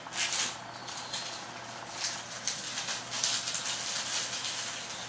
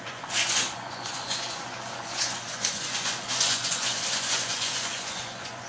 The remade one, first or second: second